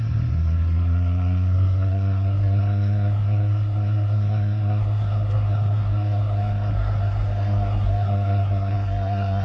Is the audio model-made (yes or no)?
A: yes